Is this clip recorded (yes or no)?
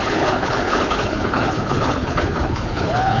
no